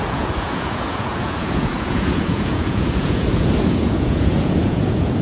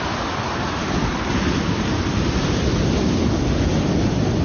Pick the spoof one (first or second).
first